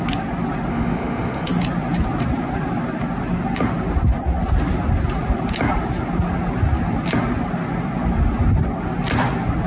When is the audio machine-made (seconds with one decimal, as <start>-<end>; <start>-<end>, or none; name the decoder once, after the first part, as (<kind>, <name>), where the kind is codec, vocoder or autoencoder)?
0.7-1.5 (autoencoder, DAC-VAE)